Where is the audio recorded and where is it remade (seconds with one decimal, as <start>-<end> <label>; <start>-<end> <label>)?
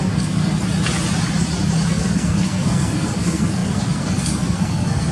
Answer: 0.0-0.5 remade; 0.5-1.9 recorded; 1.9-5.1 remade